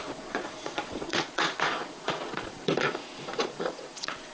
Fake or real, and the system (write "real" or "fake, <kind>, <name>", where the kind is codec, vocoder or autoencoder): fake, vocoder, Vocos